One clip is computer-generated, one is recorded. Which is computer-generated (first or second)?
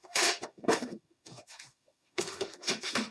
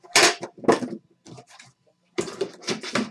first